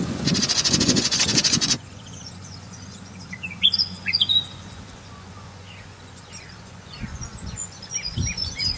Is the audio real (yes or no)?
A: no